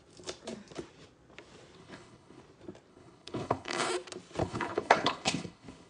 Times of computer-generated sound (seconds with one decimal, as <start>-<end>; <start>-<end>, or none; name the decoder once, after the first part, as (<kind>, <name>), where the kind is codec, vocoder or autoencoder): 1.8-2.4 (codec, HILCodec); 2.9-3.9; 4.4-5.9